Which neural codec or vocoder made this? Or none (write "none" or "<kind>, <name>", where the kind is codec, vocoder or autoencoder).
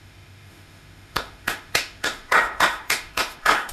autoencoder, DAC-VAE